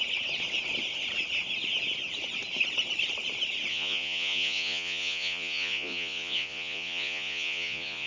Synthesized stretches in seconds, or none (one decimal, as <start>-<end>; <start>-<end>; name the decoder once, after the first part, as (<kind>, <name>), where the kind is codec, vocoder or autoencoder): 3.7-8.1 (vocoder, Vocos)